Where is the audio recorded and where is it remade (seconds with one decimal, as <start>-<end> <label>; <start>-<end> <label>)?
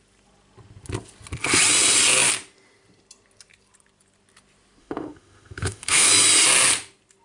0.0-4.8 recorded; 4.8-6.1 remade; 6.1-7.2 recorded